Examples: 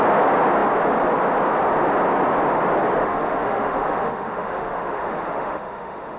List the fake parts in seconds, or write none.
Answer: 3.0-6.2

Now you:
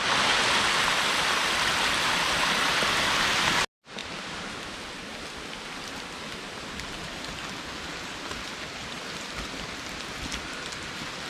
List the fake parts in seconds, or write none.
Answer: none